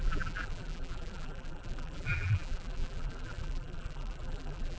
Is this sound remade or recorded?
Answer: remade